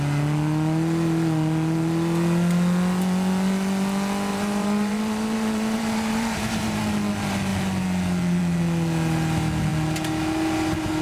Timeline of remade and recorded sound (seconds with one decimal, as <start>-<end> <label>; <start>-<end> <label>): 0.0-4.3 recorded; 4.3-6.8 remade; 6.8-11.0 recorded